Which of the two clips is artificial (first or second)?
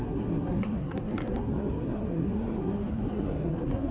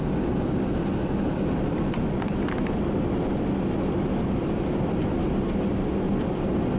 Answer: first